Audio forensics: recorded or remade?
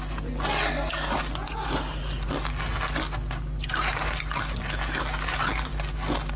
recorded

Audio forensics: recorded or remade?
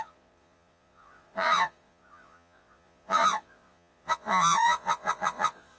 remade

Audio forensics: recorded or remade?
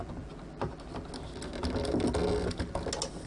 recorded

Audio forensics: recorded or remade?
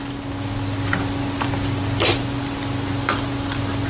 recorded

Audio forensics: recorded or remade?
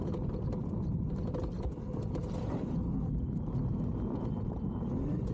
recorded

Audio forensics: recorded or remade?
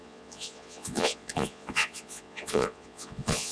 remade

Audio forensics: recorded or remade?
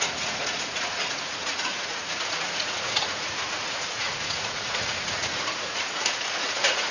remade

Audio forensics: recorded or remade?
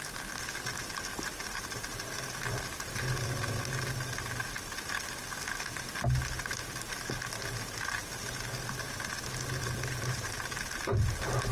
recorded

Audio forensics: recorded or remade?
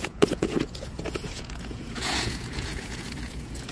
remade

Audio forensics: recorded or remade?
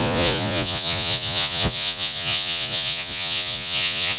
remade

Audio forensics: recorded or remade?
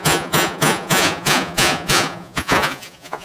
remade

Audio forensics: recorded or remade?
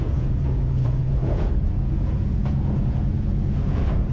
remade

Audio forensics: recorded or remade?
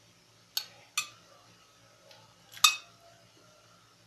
recorded